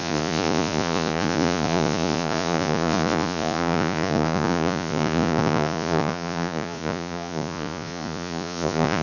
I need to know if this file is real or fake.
fake